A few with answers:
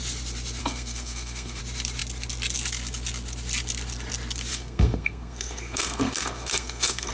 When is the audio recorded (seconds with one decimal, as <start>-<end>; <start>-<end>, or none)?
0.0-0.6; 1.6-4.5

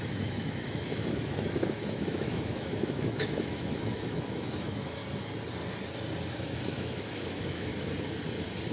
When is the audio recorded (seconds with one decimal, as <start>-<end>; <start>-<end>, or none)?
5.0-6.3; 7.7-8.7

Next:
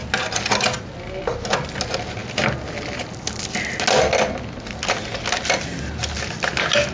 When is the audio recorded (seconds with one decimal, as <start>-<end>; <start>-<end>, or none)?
0.0-6.9

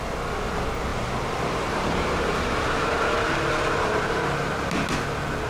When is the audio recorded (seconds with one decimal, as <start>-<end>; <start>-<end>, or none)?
0.0-0.9; 4.2-5.5